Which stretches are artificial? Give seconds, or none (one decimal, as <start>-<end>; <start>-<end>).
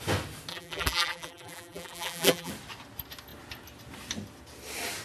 0.5-2.5